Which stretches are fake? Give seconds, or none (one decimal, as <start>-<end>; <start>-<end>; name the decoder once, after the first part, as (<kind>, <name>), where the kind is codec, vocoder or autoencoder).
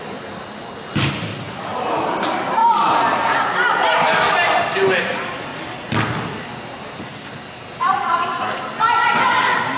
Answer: 1.3-1.8 (vocoder, Vocos)